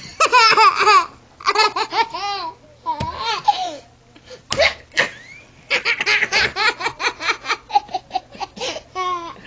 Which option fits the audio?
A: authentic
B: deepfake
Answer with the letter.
A